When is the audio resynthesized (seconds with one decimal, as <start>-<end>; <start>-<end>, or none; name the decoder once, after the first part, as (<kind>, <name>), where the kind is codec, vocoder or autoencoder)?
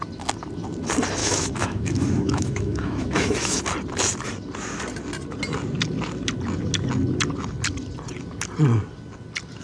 1.2-3.6 (autoencoder, DAC-VAE)